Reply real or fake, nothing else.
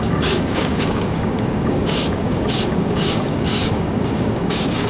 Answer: fake